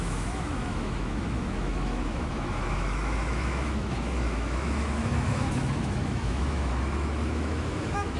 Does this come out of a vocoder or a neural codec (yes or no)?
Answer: yes